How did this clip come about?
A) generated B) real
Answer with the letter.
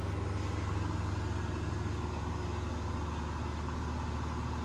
B